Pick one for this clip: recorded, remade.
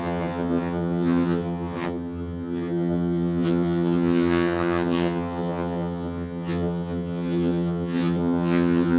remade